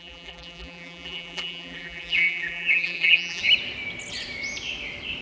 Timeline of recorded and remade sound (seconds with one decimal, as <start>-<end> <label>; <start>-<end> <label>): 0.0-3.4 remade; 3.4-5.2 recorded